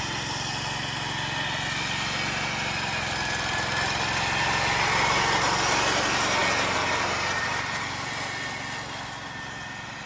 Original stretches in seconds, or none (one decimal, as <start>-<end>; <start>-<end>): 0.0-10.1